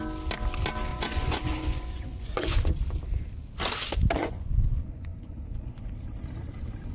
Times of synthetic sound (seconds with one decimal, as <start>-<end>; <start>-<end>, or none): 0.9-2.7; 4.2-5.9